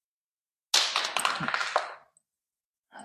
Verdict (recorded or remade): recorded